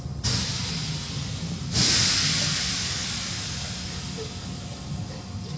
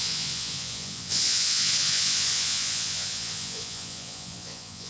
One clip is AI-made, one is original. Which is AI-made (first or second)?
second